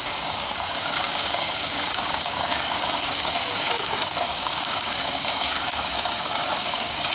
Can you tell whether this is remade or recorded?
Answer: remade